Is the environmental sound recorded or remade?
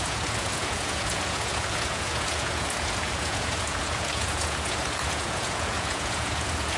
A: remade